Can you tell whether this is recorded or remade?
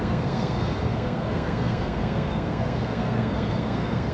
remade